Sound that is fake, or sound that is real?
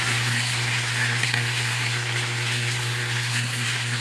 fake